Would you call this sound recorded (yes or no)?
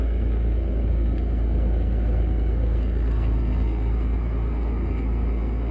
no